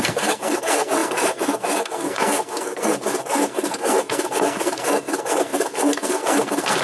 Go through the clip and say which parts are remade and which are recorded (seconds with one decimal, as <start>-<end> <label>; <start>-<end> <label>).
0.0-6.8 remade